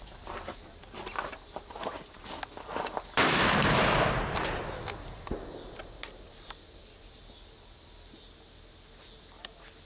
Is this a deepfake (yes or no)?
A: no